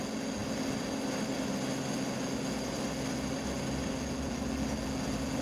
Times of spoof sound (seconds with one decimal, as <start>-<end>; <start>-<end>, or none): none